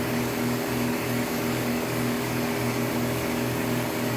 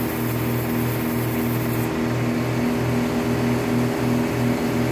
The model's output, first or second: first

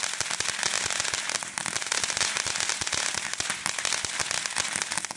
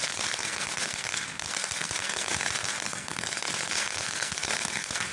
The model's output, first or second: second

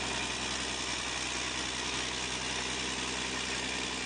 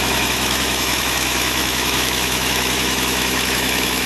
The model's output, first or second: second